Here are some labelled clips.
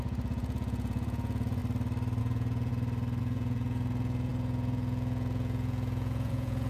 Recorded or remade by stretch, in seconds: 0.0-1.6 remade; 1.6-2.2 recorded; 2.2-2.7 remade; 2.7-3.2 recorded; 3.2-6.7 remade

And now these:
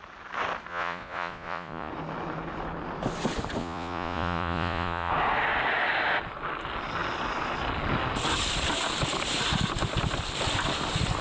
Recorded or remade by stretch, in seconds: 0.0-0.7 recorded; 0.7-1.9 remade; 1.9-3.6 recorded; 3.6-5.1 remade; 5.1-11.2 recorded

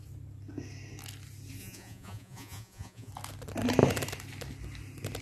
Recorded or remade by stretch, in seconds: 0.0-1.6 recorded; 1.6-3.1 remade; 3.1-5.2 recorded

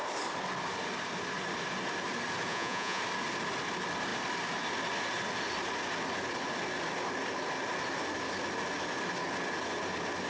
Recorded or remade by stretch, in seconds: 0.0-2.5 recorded; 2.5-3.0 remade; 3.0-10.3 recorded

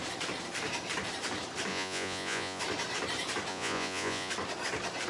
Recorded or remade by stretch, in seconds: 0.0-1.7 recorded; 1.7-2.6 remade; 2.6-3.5 recorded; 3.5-4.3 remade; 4.3-5.1 recorded

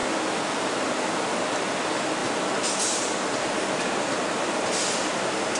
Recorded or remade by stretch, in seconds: 0.0-5.6 recorded

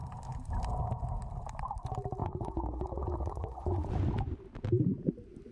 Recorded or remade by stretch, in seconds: 0.0-2.2 recorded; 2.2-3.9 remade; 3.9-5.5 recorded